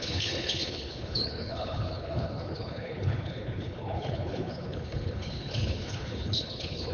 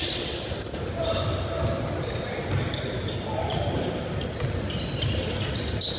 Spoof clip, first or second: first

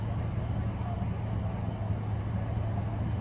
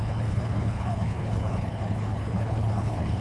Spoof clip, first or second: second